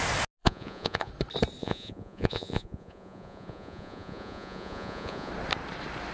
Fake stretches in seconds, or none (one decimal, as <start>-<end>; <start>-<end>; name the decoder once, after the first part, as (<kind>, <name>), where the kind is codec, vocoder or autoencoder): 0.4-1.1 (vocoder, Vocos); 1.6-5.3